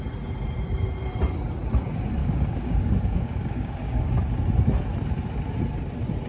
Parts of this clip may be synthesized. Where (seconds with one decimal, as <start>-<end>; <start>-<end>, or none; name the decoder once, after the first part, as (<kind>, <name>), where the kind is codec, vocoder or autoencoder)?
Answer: 2.2-4.2 (codec, DAC)